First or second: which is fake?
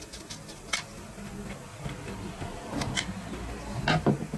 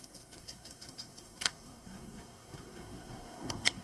second